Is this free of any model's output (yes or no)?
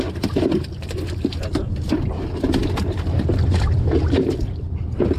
yes